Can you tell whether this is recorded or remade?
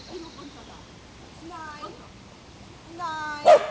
recorded